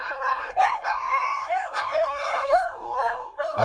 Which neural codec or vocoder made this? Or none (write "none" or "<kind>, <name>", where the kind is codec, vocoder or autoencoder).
codec, SNAC